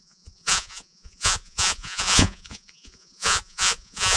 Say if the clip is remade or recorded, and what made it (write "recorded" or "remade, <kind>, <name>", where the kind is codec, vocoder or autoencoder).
remade, vocoder, Vocos